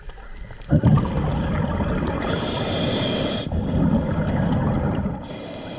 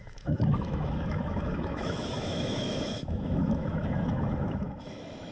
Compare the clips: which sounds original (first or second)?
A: first